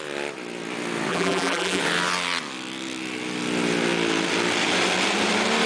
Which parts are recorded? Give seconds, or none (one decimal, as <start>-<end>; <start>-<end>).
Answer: 0.0-1.1; 1.8-5.7